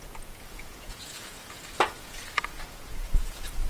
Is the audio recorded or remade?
remade